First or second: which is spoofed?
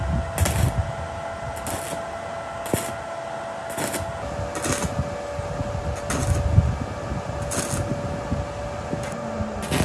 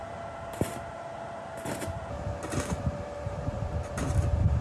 second